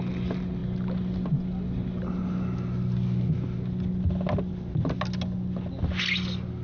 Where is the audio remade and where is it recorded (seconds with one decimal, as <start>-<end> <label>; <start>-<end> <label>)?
0.0-6.6 recorded